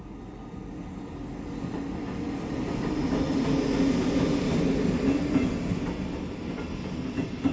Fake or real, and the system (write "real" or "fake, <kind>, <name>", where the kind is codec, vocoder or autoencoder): real